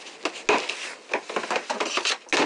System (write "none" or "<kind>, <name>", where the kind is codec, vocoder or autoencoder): none